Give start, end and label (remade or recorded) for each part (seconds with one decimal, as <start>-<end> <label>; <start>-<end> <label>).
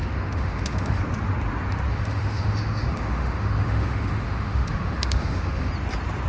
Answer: 0.0-1.0 remade; 1.0-1.9 recorded; 1.9-5.7 remade; 5.7-6.3 recorded